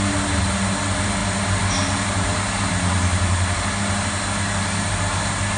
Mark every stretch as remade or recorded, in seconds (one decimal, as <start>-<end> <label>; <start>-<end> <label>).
0.0-5.6 recorded